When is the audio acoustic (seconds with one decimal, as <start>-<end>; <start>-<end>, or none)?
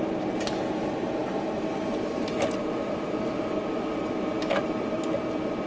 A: none